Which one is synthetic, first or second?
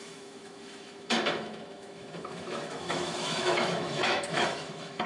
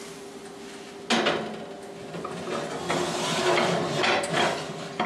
first